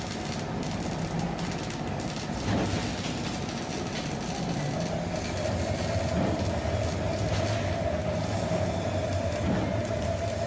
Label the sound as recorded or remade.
recorded